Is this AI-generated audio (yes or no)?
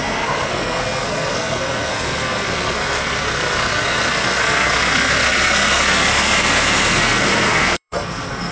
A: yes